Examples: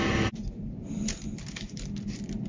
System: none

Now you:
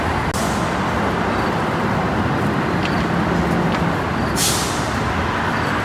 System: none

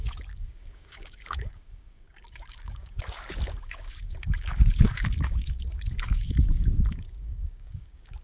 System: codec, DAC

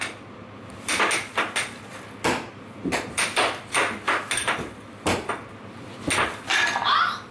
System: none